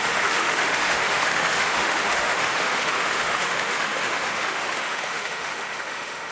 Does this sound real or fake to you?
fake